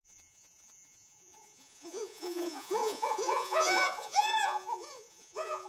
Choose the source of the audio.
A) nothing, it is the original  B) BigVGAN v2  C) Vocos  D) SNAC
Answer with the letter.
C